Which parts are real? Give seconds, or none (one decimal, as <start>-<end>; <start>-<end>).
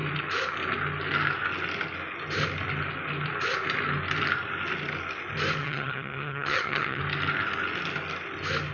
0.0-5.6; 7.0-8.7